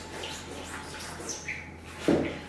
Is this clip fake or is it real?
real